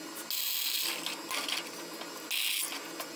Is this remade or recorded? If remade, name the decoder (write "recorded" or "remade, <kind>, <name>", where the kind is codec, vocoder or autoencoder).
recorded